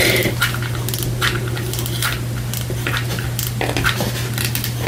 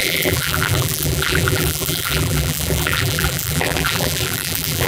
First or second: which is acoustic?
first